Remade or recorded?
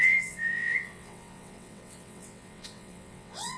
remade